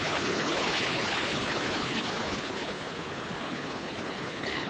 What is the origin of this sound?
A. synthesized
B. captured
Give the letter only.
A